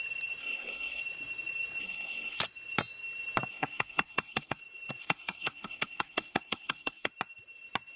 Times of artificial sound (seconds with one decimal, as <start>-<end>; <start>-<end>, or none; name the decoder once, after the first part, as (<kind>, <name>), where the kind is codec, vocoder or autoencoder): 0.4-1.0 (codec, SNAC); 1.8-2.4; 3.5-4.6; 5.0-7.1